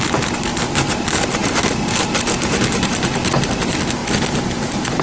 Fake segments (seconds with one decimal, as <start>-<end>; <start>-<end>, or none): none